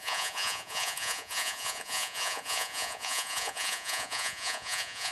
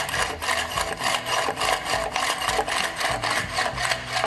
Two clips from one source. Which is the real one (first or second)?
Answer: second